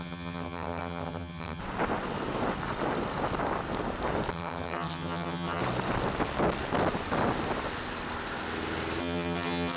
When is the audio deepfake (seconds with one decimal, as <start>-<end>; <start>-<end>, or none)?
0.0-1.6; 4.3-5.6; 9.0-9.8